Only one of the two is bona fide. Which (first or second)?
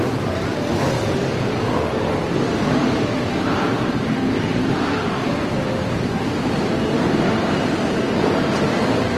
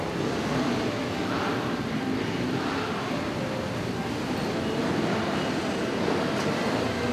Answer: second